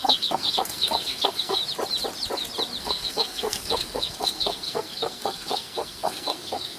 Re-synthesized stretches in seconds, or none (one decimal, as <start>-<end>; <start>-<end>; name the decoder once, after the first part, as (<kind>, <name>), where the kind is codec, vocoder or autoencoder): 0.0-1.6 (codec, SNAC); 2.8-6.8